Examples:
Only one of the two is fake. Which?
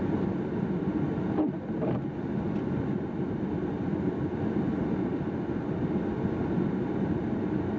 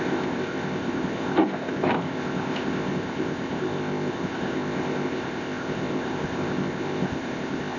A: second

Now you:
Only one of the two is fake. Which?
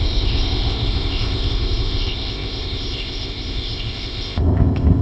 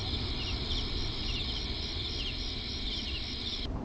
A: first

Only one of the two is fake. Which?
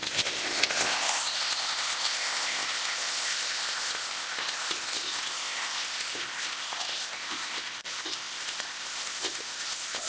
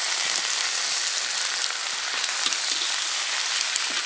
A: first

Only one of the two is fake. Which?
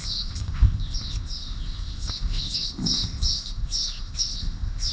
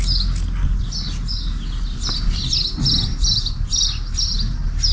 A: first